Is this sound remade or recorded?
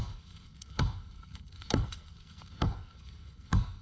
remade